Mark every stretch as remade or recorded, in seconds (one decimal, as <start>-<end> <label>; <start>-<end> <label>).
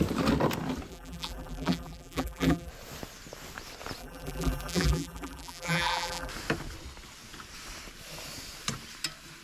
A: 0.0-0.9 recorded; 0.9-2.7 remade; 2.7-4.0 recorded; 4.0-6.3 remade; 6.3-9.4 recorded